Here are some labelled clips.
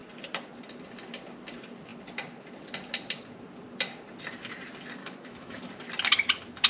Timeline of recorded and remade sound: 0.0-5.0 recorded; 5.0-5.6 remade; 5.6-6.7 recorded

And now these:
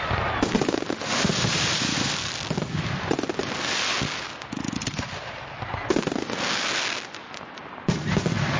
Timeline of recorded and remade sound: 0.0-8.6 recorded

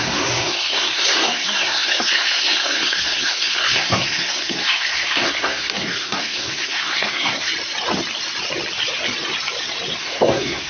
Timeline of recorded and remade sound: 0.0-7.5 remade; 7.5-10.0 recorded; 10.0-10.7 remade

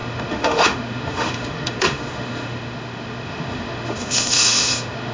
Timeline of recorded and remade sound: 0.0-5.1 remade

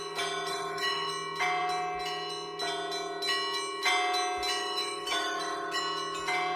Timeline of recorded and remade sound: 0.0-0.5 recorded; 0.5-1.1 remade; 1.1-4.6 recorded; 4.6-5.8 remade; 5.8-6.6 recorded

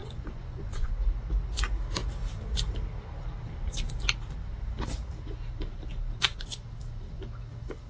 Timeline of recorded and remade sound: 0.0-0.9 remade; 0.9-7.9 recorded